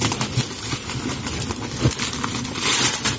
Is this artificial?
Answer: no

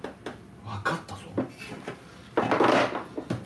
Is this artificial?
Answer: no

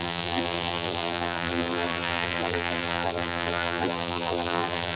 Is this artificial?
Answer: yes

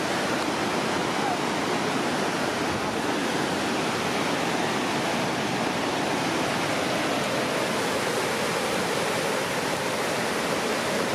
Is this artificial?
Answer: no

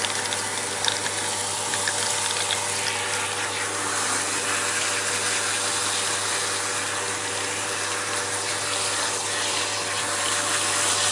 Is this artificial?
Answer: no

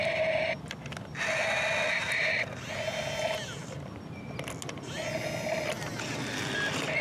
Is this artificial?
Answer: no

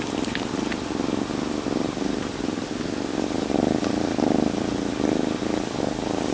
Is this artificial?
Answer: no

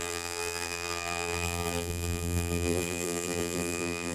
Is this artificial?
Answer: yes